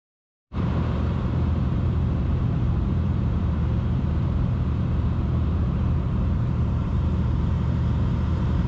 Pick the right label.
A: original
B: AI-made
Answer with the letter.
B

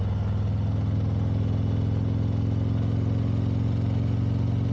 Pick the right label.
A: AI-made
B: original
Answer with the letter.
B